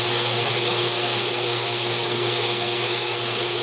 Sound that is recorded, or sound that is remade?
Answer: remade